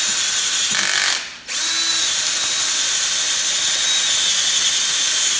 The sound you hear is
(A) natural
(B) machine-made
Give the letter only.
A